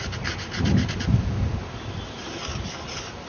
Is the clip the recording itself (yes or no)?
yes